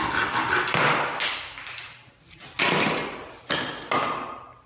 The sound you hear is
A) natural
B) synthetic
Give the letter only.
A